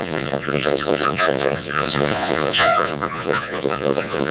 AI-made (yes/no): yes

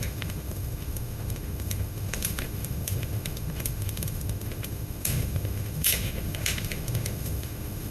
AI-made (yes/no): yes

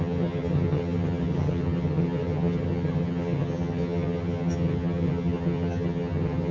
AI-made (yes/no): yes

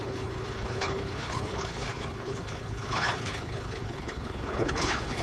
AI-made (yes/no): yes